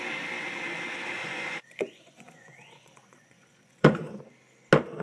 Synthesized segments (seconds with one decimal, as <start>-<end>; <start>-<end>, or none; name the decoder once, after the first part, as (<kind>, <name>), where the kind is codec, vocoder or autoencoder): 1.2-4.2 (vocoder, Vocos)